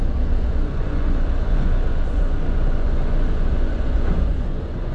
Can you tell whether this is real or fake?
fake